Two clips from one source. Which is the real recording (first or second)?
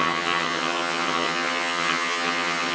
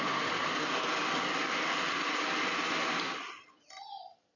second